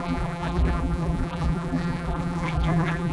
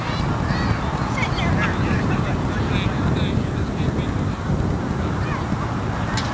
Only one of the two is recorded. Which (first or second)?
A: second